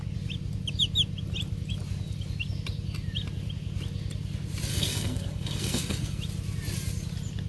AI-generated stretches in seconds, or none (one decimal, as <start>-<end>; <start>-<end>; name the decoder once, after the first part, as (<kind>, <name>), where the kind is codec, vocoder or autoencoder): 4.7-6.2 (codec, SNAC)